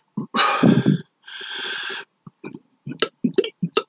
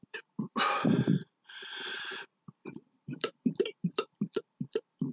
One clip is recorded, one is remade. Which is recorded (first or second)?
first